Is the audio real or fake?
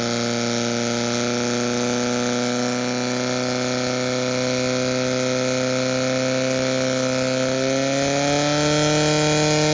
real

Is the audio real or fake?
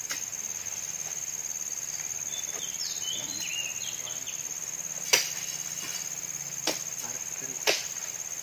real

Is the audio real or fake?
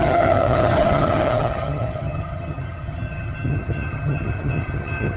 fake